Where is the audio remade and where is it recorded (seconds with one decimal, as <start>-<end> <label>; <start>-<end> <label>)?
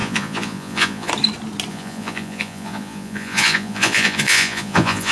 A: 0.0-1.1 remade; 1.1-1.7 recorded; 1.7-5.1 remade